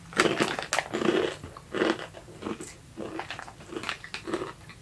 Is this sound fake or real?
real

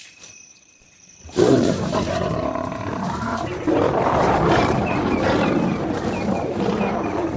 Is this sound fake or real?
fake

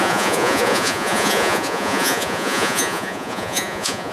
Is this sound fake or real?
fake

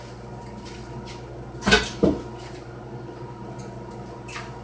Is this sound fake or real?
real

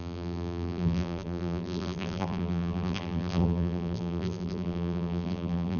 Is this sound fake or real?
fake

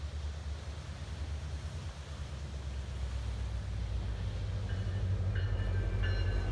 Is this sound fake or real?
real